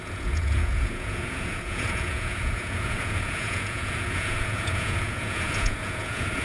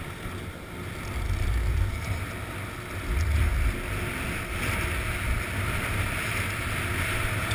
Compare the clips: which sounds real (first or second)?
second